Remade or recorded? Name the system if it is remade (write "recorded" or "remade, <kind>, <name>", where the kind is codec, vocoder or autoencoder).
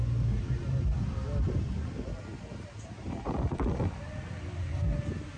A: recorded